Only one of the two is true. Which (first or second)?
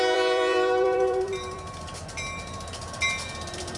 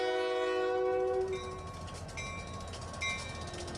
second